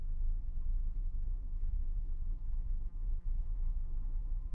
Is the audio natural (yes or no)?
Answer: no